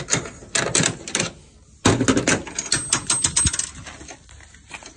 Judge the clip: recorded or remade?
recorded